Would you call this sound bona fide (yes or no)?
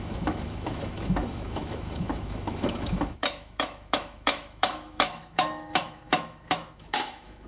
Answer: no